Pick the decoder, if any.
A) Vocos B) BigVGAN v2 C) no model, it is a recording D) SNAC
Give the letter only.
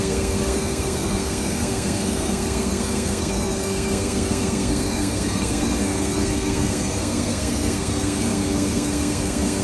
D